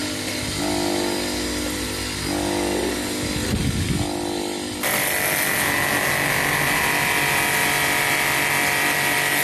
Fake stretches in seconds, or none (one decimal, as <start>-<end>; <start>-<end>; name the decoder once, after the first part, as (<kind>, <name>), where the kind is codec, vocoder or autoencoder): none